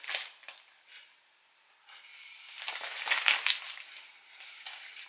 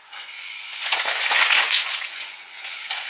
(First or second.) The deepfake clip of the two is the second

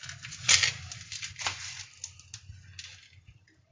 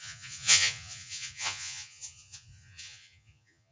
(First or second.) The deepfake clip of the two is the second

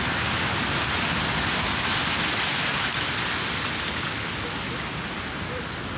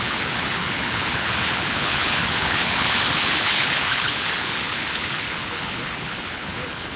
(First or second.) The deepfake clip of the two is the second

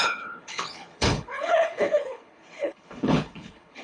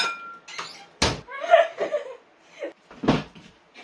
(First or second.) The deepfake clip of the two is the first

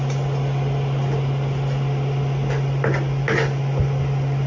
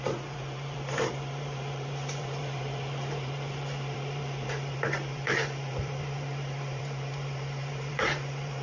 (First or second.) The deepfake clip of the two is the second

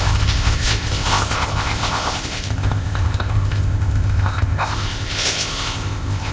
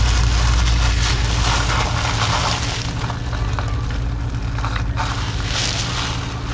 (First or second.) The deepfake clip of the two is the first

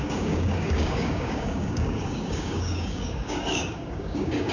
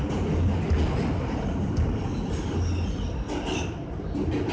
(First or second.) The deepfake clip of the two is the first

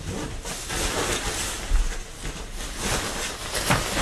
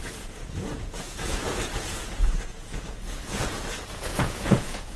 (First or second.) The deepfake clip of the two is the second